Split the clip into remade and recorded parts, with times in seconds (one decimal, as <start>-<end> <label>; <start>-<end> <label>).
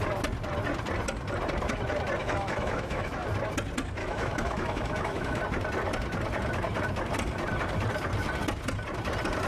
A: 0.0-2.2 recorded; 2.2-3.1 remade; 3.1-4.0 recorded; 4.0-5.4 remade; 5.4-9.5 recorded